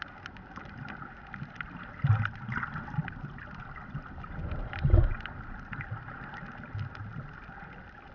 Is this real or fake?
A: real